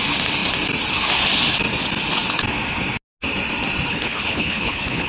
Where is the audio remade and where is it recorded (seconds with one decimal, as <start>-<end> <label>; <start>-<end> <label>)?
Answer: 0.0-3.9 recorded; 3.9-5.1 remade